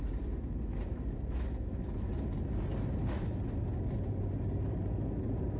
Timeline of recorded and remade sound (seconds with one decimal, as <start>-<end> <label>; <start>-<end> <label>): 0.0-5.6 recorded